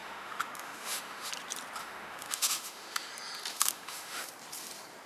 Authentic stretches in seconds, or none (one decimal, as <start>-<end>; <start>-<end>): 1.3-1.8; 3.1-3.5; 4.3-5.1